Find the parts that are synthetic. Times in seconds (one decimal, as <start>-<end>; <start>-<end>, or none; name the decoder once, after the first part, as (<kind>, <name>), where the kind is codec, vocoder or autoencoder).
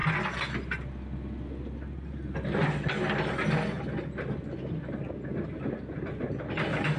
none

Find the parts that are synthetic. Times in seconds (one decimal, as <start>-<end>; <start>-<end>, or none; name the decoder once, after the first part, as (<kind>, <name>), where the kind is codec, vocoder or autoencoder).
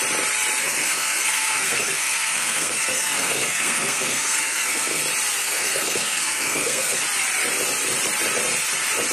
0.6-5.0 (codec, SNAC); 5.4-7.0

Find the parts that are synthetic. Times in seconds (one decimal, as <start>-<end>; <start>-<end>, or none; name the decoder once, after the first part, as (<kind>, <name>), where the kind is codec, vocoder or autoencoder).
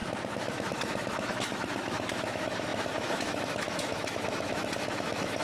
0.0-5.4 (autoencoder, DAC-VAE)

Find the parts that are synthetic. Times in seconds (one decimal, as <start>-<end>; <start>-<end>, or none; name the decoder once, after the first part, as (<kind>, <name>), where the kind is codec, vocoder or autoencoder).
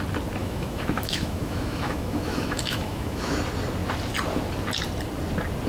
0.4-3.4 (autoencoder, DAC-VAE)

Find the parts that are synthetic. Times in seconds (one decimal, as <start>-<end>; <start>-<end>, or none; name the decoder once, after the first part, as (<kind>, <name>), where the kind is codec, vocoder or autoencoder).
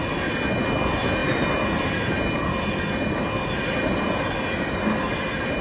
none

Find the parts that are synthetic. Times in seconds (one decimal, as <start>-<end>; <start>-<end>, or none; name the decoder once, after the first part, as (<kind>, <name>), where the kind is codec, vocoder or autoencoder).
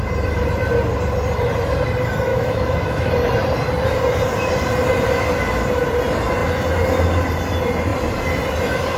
2.3-3.1 (autoencoder, DAC-VAE)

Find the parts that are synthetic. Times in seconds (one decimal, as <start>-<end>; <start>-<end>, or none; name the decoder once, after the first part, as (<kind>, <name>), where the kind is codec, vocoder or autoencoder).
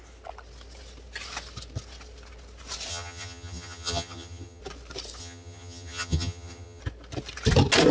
2.9-4.6 (vocoder, HiFi-GAN); 5.2-6.8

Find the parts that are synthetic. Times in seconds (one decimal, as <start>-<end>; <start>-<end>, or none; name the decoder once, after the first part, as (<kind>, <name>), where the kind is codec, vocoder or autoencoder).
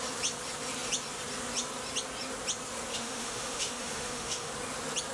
2.9-4.5 (autoencoder, DAC-VAE)